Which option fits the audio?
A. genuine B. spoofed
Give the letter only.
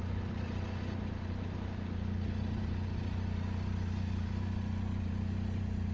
A